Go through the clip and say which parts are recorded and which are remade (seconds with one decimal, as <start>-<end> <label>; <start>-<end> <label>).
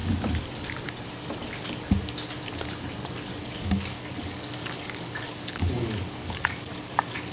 0.0-3.4 recorded; 3.4-7.3 remade